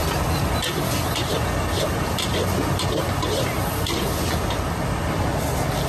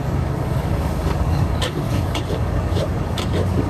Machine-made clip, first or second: second